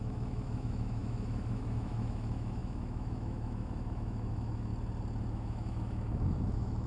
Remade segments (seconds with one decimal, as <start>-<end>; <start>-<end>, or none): 0.0-4.7; 5.3-6.9